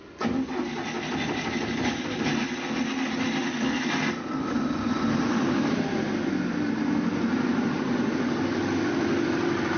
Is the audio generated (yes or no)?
no